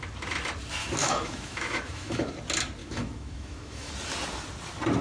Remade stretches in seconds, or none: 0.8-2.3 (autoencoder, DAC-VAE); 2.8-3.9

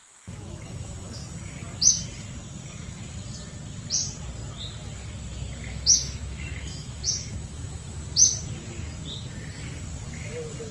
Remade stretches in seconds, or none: 0.0-1.2 (autoencoder, DAC-VAE); 5.7-8.0

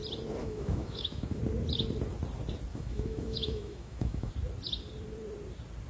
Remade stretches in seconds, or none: 0.4-1.4 (autoencoder, DAC-VAE); 2.7-4.3